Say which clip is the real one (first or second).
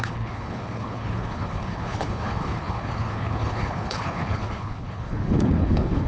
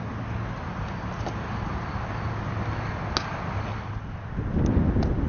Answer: second